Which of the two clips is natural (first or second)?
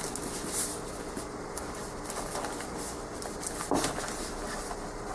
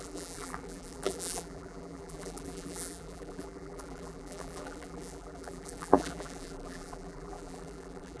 first